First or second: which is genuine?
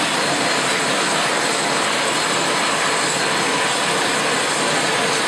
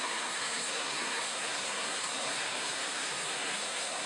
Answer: first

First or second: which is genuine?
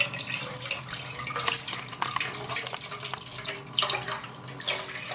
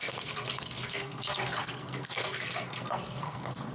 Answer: first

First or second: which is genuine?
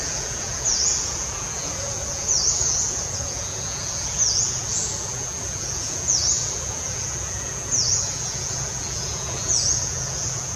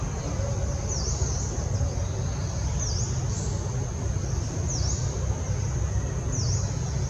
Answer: second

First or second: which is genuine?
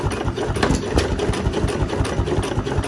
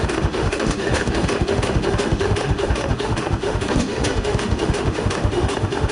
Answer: first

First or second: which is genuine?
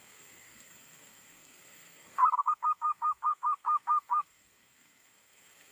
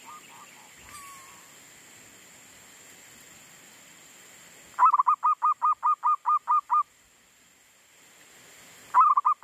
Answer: second